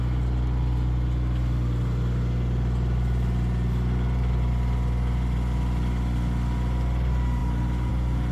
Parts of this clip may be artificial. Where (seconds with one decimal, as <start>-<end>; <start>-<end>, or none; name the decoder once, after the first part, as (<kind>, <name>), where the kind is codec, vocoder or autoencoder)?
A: none

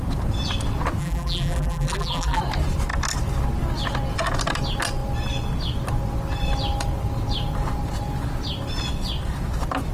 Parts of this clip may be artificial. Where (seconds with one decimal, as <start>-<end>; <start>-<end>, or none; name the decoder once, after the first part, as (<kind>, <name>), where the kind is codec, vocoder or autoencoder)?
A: 1.0-2.4 (vocoder, BigVGAN v2)